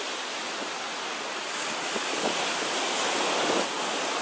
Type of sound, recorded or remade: recorded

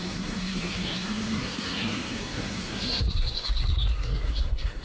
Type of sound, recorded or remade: remade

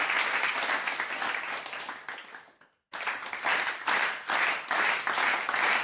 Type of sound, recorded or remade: recorded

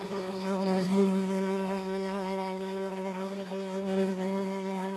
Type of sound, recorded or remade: remade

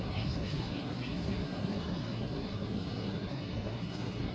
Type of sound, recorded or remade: remade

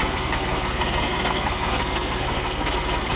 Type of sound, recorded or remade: remade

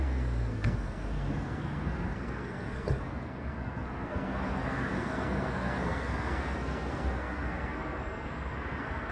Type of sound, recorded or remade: remade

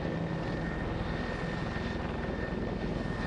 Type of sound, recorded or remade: recorded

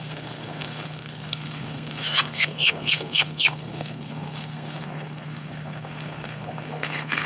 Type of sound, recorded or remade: remade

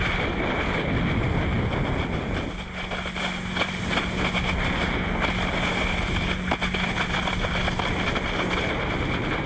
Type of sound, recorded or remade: recorded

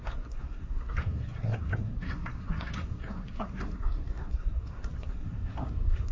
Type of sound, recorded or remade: remade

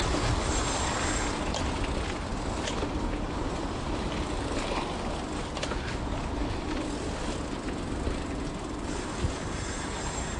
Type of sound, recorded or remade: recorded